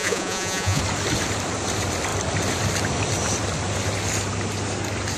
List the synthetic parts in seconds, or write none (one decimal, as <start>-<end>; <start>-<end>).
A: 0.0-0.8